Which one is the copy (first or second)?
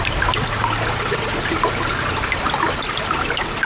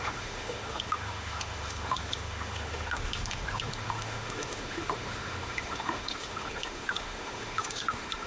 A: second